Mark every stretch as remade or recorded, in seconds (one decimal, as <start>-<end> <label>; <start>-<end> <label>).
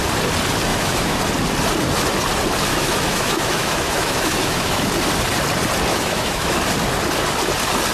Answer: 0.0-0.7 recorded; 0.7-1.2 remade; 1.2-2.7 recorded; 2.7-4.9 remade; 4.9-5.9 recorded; 5.9-6.6 remade; 6.6-7.9 recorded